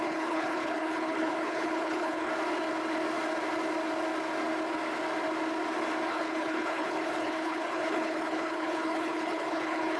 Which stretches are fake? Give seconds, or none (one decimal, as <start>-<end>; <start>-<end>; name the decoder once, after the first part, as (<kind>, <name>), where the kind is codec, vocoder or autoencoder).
0.0-2.3 (codec, HILCodec); 6.1-10.0